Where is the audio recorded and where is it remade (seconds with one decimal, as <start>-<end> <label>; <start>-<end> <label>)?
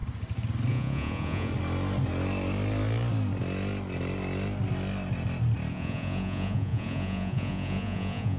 0.0-0.7 recorded; 0.7-1.5 remade; 1.5-5.7 recorded; 5.7-8.4 remade